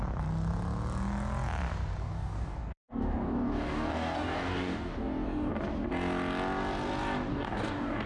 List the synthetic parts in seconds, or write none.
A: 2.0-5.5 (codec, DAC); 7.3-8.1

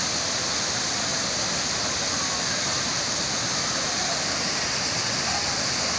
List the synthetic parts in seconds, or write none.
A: none

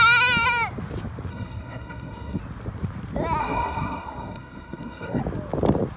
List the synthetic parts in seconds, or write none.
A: 1.3-2.4 (codec, SNAC); 3.4-5.2

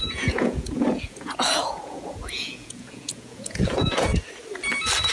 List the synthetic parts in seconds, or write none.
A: 0.0-4.1 (vocoder, Vocos)

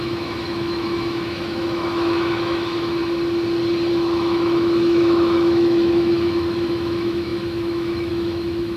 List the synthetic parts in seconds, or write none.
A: 0.0-3.0 (autoencoder, DAC-VAE); 3.9-8.8

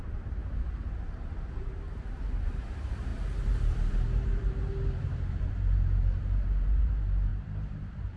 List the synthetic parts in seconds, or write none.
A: 0.0-0.4 (vocoder, BigVGAN v2); 1.7-8.2

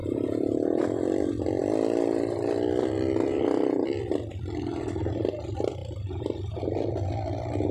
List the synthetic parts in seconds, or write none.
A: 0.0-0.8 (vocoder, Vocos)

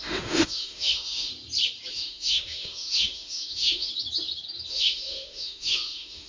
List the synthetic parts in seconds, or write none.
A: 0.0-1.3 (autoencoder, DAC-VAE); 1.9-3.9; 4.7-6.3